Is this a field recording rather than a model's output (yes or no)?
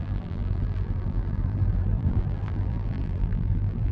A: no